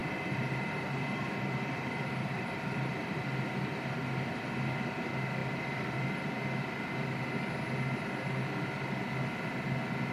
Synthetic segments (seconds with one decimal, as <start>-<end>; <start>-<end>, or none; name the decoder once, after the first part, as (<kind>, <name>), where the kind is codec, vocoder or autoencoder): 0.0-3.2 (vocoder, BigVGAN v2); 5.4-6.4

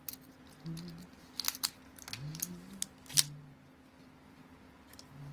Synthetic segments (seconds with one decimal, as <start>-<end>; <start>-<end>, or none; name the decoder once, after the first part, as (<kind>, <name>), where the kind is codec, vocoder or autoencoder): none

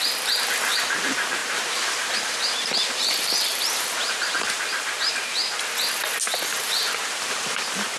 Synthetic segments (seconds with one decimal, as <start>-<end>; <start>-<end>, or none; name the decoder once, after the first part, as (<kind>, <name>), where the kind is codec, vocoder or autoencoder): 0.0-5.4 (vocoder, BigVGAN v2); 6.6-8.0

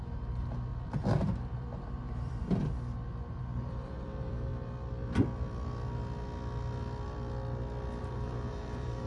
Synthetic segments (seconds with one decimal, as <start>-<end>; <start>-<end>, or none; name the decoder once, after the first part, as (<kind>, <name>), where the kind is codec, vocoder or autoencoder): 0.0-0.7 (vocoder, BigVGAN v2); 1.2-2.6; 3.3-4.5; 8.0-9.1